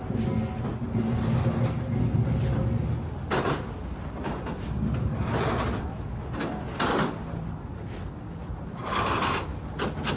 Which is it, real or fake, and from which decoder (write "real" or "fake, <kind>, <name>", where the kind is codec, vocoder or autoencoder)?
real